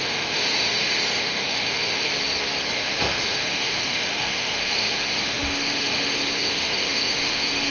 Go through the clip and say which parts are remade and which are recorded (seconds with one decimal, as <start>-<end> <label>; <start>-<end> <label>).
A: 0.0-2.1 remade; 2.1-2.7 recorded; 2.7-7.7 remade